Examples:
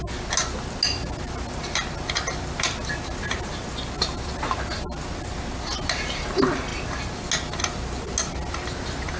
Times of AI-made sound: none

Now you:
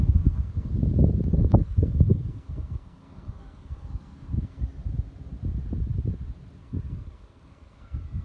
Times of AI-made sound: 0.0-0.7; 1.3-4.6; 6.6-8.2

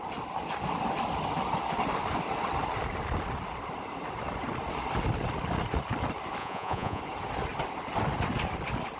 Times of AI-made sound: 6.4-7.0

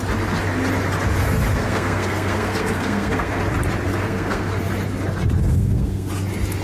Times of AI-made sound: 1.5-3.4; 3.9-4.5; 5.5-6.1

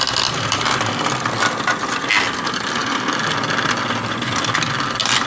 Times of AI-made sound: none

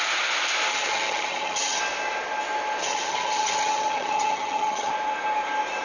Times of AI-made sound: 0.7-1.8; 2.8-4.9

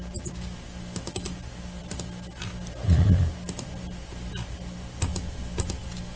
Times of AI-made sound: none